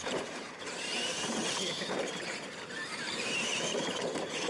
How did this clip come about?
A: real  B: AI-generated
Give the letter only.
B